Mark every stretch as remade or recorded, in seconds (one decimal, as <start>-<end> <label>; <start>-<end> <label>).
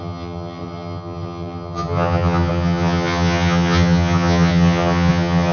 0.0-5.5 remade